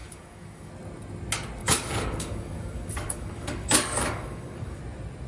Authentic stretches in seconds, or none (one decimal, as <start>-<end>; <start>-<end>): 0.7-1.6; 4.8-5.3